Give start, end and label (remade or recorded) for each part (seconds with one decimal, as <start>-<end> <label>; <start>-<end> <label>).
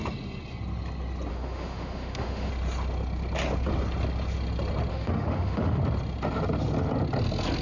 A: 0.0-1.3 recorded; 1.3-2.5 remade; 2.5-4.9 recorded; 4.9-5.8 remade; 5.8-7.6 recorded